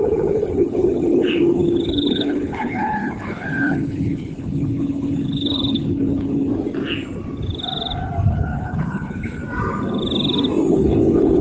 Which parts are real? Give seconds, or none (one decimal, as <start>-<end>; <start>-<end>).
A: 6.5-8.3; 9.4-10.7